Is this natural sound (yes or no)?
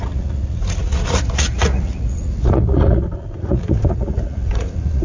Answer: no